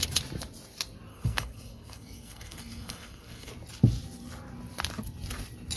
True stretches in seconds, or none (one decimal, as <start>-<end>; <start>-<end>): 0.0-1.1; 3.5-5.8